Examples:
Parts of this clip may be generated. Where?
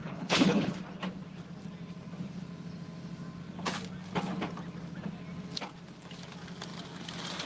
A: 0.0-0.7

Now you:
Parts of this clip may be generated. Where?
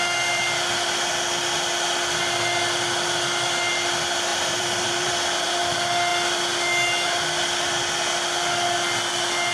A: 4.3-5.6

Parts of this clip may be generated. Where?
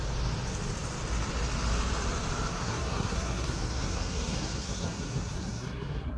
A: 2.5-6.2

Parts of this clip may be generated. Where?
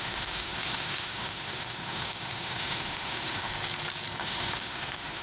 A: 0.0-3.5; 4.2-5.2